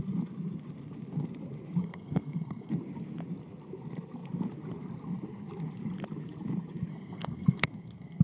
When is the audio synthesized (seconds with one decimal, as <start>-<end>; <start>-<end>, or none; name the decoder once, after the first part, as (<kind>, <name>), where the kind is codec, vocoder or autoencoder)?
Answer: 1.8-2.7 (codec, SNAC); 6.9-8.2